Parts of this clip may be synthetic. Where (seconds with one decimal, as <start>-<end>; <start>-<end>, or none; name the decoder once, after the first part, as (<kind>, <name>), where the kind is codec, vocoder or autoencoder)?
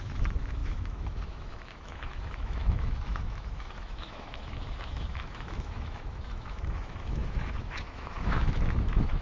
0.0-9.2 (autoencoder, DAC-VAE)